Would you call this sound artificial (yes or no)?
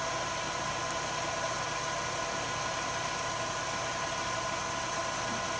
no